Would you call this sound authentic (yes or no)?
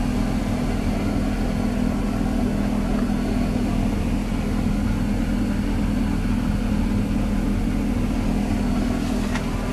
yes